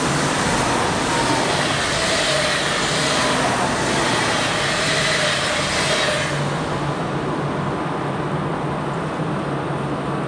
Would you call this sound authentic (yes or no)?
yes